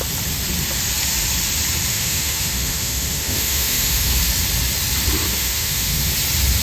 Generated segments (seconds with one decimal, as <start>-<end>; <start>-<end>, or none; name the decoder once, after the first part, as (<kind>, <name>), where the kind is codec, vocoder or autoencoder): 1.9-4.2 (autoencoder, DAC-VAE); 5.3-6.1